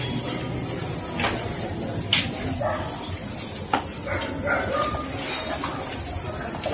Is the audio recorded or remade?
recorded